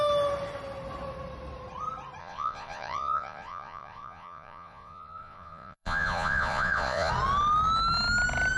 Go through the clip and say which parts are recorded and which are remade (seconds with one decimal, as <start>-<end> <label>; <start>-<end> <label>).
0.0-2.2 recorded; 2.2-7.1 remade; 7.1-8.6 recorded